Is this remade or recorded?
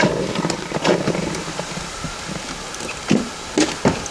recorded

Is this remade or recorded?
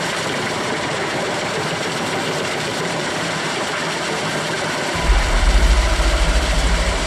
remade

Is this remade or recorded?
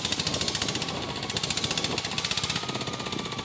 recorded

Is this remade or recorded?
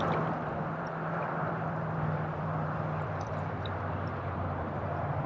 remade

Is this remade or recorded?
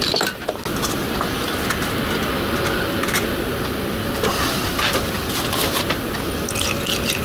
recorded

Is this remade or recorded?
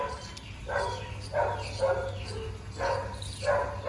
recorded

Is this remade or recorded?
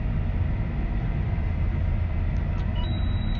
remade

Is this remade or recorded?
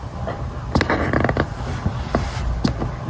recorded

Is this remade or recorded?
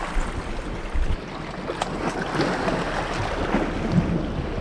recorded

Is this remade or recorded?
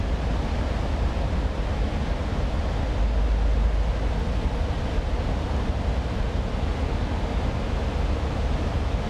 recorded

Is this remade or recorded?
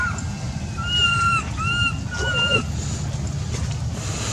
recorded